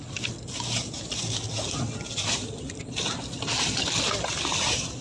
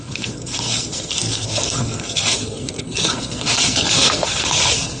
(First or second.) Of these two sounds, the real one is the first